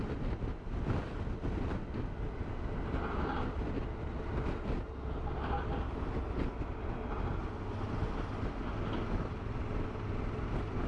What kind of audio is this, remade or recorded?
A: recorded